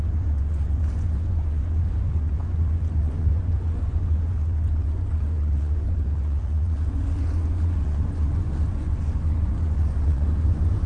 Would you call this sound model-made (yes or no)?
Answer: yes